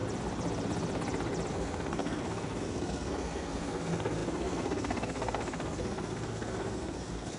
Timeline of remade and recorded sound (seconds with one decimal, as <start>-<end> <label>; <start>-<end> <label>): 0.0-1.5 recorded; 1.5-7.4 remade